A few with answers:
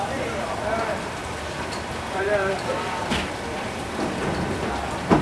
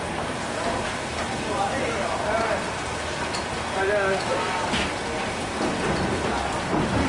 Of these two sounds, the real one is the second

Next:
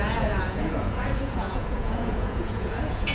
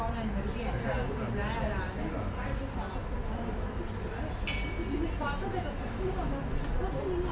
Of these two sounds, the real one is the second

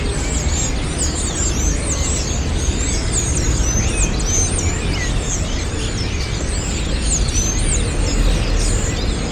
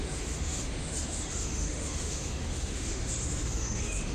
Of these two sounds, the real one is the first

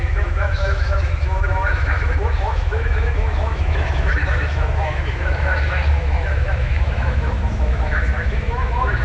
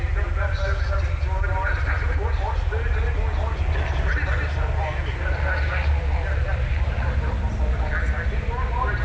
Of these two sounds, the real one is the second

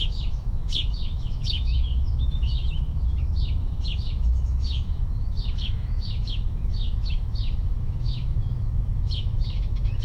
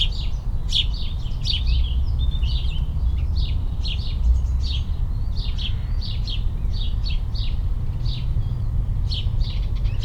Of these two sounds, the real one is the second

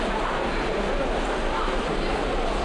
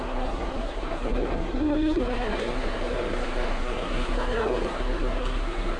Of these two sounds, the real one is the first